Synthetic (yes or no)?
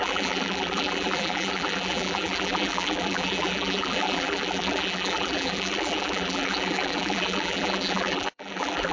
yes